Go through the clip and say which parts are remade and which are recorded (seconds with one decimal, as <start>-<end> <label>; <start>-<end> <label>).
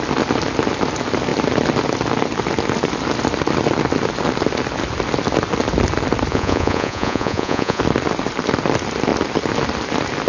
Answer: 0.0-6.3 recorded; 6.3-7.8 remade; 7.8-10.3 recorded